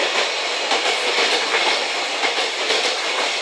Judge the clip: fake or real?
real